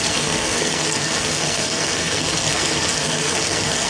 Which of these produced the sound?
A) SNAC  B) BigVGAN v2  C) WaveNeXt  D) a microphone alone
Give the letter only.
A